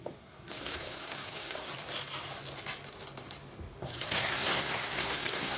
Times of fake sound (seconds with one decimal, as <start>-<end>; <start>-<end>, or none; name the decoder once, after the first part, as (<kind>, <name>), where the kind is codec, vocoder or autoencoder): 0.0-1.7 (codec, SNAC); 3.8-5.6